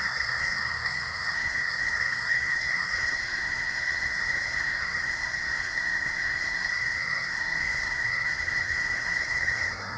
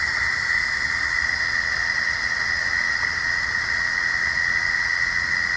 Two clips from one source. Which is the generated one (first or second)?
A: first